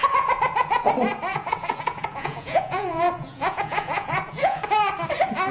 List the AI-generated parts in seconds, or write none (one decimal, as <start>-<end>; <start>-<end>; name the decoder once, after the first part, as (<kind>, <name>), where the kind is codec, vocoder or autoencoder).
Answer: 0.0-0.9 (vocoder, Vocos); 1.3-4.6